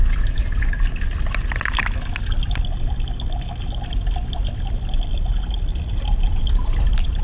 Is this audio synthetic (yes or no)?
no